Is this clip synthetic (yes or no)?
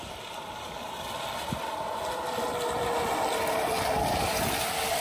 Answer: no